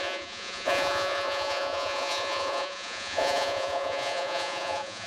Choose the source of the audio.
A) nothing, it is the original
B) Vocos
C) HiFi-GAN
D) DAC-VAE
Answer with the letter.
B